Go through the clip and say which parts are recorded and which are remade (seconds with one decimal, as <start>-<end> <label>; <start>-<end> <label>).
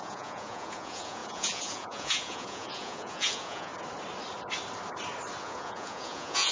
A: 0.0-3.7 remade; 3.7-5.4 recorded; 5.4-6.5 remade